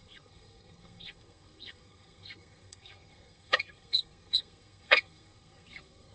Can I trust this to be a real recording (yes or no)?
no